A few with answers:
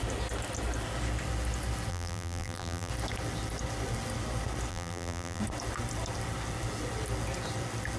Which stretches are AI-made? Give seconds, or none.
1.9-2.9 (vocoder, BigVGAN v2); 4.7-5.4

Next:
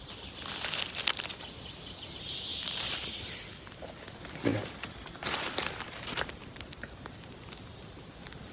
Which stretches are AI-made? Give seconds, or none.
2.5-3.9 (vocoder, BigVGAN v2); 4.5-7.4

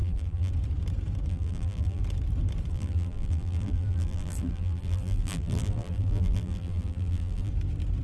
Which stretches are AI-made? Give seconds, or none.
0.0-0.5 (vocoder, BigVGAN v2); 1.3-2.0; 2.7-7.5

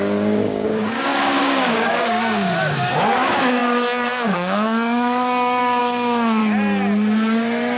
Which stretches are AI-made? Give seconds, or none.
0.0-6.4 (codec, DAC)

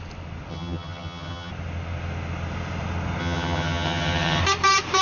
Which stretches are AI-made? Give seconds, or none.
0.5-1.5 (vocoder, HiFi-GAN); 3.2-4.4

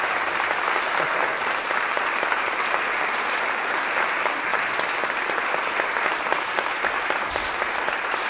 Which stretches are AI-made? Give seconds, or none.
0.0-4.5 (vocoder, BigVGAN v2); 5.0-8.3